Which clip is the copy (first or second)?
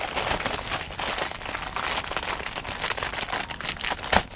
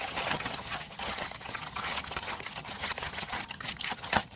second